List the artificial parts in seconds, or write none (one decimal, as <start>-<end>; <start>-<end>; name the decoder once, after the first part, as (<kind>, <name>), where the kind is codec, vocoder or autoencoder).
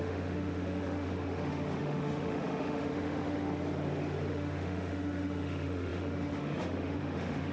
0.0-3.6 (autoencoder, DAC-VAE); 4.3-7.5